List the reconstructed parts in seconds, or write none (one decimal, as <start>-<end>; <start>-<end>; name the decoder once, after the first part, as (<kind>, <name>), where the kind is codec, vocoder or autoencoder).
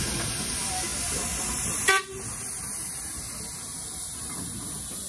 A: none